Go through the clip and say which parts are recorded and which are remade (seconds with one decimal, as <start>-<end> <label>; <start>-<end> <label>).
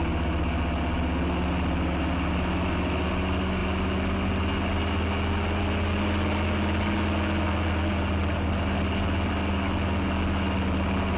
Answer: 0.0-11.2 recorded